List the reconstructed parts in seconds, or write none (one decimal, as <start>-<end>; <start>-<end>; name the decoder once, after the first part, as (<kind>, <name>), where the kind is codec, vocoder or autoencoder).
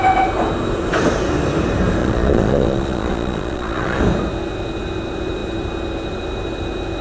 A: 2.0-4.0 (vocoder, Vocos)